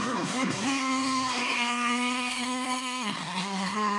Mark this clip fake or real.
fake